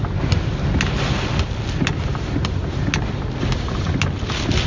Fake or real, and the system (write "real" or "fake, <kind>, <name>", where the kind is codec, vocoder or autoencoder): real